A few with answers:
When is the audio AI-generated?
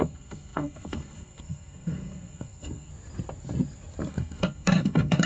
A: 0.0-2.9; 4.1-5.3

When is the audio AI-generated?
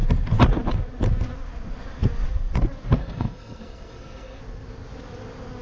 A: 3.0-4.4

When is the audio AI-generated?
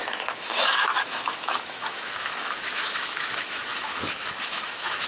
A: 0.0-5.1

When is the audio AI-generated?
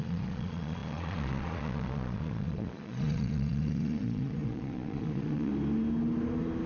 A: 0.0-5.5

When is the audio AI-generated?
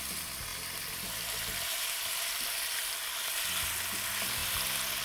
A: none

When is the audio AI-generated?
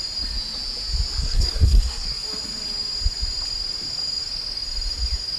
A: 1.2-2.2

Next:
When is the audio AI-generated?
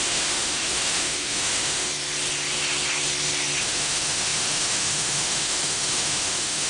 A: 0.0-1.9; 3.6-6.7